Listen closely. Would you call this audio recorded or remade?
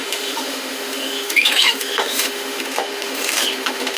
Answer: remade